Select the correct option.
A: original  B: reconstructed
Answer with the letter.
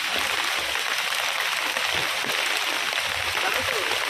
A